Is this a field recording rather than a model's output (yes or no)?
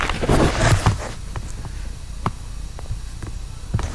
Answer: yes